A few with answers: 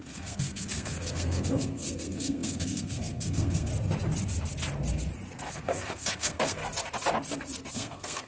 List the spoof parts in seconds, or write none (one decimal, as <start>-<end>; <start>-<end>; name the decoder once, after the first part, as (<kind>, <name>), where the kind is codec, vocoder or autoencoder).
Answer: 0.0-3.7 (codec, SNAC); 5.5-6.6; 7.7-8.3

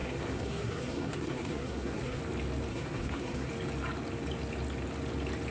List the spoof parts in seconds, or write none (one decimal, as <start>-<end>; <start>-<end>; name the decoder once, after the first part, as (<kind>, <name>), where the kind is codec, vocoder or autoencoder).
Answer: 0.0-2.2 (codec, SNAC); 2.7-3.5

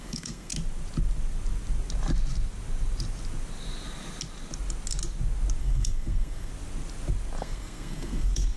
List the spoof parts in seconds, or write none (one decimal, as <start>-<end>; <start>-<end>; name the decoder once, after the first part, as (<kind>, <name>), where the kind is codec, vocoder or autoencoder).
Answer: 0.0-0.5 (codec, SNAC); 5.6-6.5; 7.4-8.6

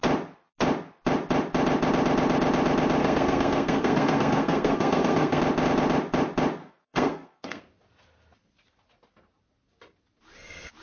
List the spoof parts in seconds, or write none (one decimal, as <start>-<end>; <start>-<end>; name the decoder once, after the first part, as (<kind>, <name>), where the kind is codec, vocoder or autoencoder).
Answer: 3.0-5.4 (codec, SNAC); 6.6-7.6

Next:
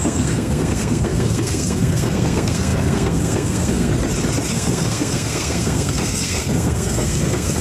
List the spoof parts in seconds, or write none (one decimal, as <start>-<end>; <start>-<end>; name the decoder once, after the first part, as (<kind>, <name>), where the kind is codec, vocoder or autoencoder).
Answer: 0.0-3.9 (codec, SNAC); 4.5-7.6